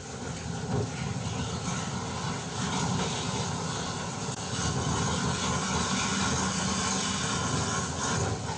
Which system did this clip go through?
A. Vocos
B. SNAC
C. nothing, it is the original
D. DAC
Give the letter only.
C